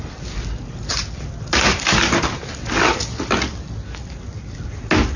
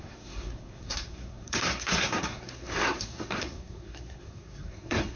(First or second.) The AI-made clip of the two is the second